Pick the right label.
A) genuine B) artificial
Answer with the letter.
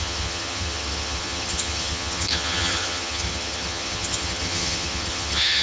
B